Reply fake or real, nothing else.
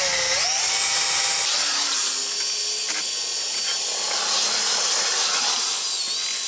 real